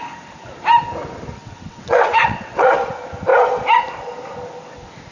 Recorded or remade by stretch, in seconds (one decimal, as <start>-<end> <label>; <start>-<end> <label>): 0.0-1.4 recorded; 1.4-2.9 remade; 2.9-5.1 recorded